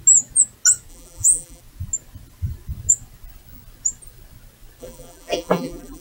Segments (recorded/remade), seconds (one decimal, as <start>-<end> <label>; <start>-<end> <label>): 0.0-0.9 recorded; 0.9-1.6 remade; 1.6-4.8 recorded; 4.8-6.0 remade